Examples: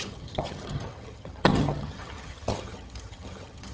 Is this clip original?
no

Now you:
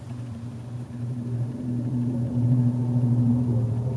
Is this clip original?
no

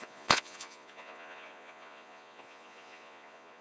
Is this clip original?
no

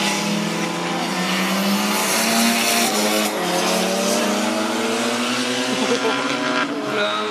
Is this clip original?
yes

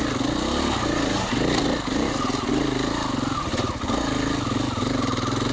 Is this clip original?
yes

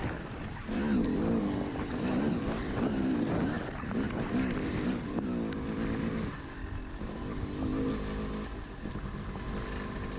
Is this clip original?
yes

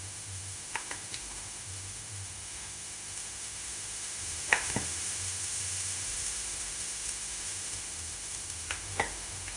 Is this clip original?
no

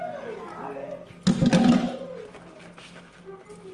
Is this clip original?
yes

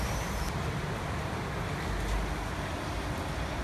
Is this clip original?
yes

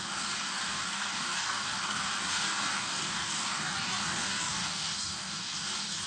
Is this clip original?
no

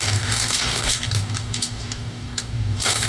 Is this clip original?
no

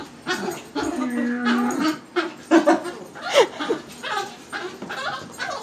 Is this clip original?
yes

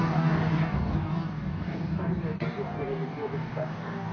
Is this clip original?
no